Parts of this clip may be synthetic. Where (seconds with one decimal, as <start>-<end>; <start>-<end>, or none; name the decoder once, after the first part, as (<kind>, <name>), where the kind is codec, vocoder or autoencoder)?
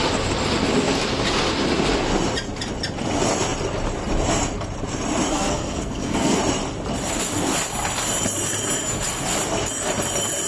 5.3-6.4 (codec, SNAC)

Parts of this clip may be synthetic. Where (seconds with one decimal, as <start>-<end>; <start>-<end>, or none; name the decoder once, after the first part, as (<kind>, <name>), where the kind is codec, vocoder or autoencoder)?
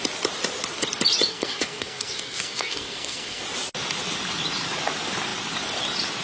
1.3-3.4 (codec, SNAC)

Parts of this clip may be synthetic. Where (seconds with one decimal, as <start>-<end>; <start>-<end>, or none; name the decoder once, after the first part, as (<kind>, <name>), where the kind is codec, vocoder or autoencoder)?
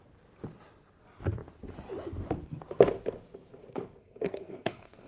4.0-5.1 (codec, SNAC)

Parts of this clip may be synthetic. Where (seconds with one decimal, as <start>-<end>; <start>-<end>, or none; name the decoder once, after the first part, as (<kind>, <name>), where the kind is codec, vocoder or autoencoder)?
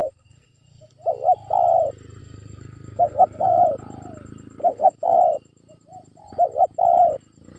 0.0-0.9 (codec, SNAC); 2.2-3.6; 4.6-5.2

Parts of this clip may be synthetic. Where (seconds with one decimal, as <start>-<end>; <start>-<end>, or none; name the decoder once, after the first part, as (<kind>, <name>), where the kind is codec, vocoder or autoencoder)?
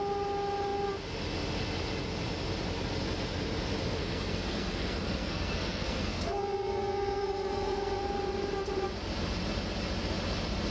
4.0-8.0 (codec, SNAC)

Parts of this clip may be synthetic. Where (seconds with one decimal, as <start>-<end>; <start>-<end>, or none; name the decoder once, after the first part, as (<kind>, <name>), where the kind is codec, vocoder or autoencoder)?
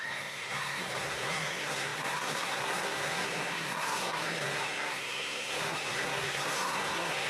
0.0-7.3 (codec, SNAC)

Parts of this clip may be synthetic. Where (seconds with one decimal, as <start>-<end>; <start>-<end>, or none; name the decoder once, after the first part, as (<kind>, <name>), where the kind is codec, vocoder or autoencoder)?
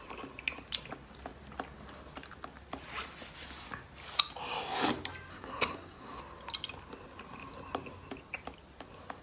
5.3-6.2 (codec, SNAC)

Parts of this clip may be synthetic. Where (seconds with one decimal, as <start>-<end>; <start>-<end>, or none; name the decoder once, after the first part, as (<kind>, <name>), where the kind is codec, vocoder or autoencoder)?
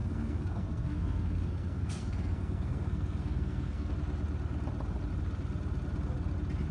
0.0-3.9 (codec, SNAC)